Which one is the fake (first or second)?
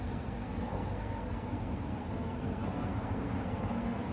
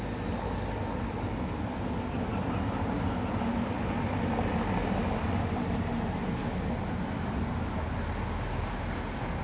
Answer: first